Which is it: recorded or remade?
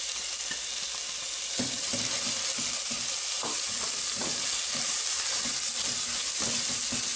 recorded